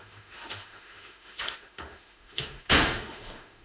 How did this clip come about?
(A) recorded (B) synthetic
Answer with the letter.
B